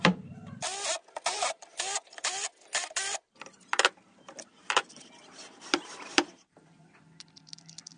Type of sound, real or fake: fake